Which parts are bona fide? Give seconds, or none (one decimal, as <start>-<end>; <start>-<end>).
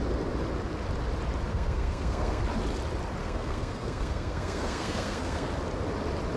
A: 0.0-1.5; 2.4-3.2; 5.5-6.4